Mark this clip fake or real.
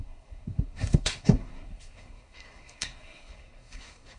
fake